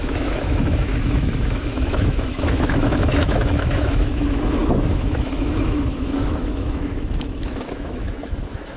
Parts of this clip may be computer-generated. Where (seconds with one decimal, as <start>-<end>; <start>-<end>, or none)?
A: 0.0-8.8